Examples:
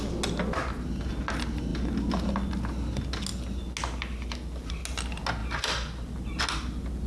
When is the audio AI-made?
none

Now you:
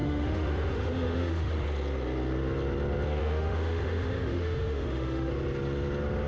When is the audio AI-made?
0.0-1.5; 3.2-5.3